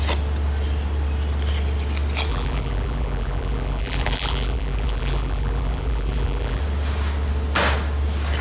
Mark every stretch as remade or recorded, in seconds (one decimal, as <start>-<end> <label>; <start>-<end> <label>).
0.0-2.3 recorded; 2.3-6.6 remade; 6.6-8.4 recorded